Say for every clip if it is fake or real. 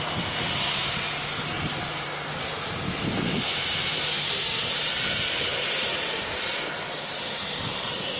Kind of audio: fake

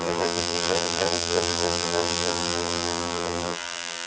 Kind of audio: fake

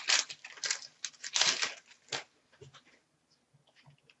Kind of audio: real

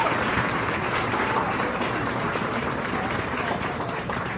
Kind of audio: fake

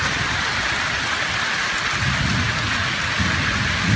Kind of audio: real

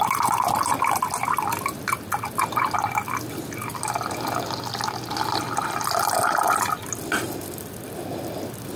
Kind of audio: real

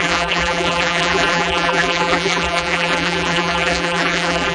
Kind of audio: fake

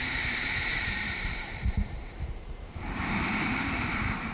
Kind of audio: fake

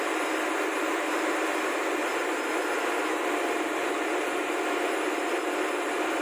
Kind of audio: real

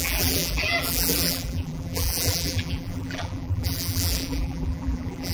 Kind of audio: fake